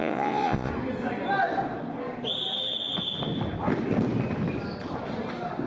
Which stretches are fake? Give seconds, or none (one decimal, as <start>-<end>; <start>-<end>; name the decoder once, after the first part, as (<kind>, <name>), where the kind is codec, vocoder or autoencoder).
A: 0.0-0.7 (vocoder, Vocos)